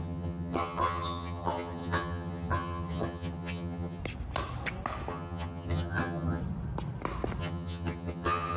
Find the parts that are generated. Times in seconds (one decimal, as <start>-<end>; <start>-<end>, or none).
0.0-4.0; 5.1-6.4; 7.4-8.6